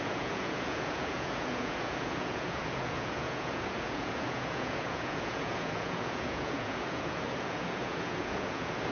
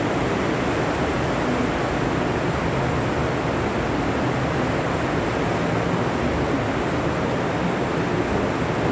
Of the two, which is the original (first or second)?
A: second